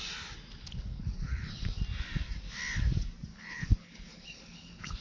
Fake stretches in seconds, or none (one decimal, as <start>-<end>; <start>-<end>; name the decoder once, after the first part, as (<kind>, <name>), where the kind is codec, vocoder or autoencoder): 0.6-1.8 (codec, HILCodec); 3.3-5.0